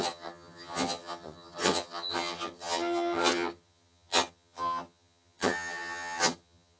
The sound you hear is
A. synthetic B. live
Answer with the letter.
A